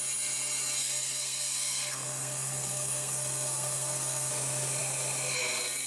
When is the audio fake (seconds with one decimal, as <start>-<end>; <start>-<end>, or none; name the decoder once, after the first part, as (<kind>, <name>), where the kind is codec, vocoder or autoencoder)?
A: 0.8-4.3 (codec, SNAC)